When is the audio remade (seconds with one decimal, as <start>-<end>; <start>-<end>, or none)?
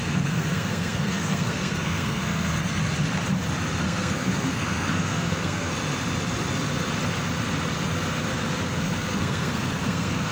0.0-2.8; 3.8-5.7; 8.8-10.3